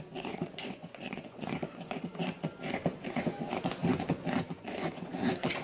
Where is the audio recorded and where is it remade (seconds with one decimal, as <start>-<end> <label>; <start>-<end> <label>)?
0.0-5.6 remade